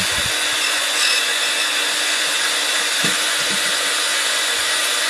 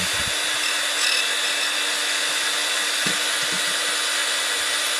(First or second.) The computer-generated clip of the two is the first